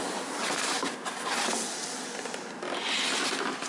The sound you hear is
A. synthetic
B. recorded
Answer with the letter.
B